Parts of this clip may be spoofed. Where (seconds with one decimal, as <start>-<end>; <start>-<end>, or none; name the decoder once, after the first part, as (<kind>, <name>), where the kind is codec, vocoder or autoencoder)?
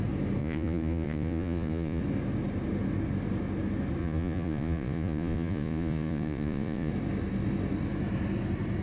0.4-2.0 (vocoder, Vocos); 4.0-6.9